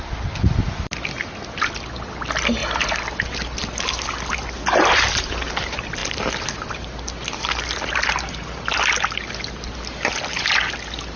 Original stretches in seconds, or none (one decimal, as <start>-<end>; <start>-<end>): 0.0-11.2